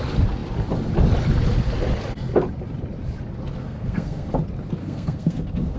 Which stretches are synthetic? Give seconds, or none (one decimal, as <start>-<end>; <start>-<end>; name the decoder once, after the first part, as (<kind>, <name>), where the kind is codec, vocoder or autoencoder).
3.6-4.3 (codec, SNAC); 4.8-5.8